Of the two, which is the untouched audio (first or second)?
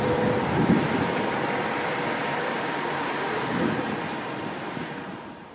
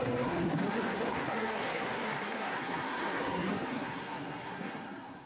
first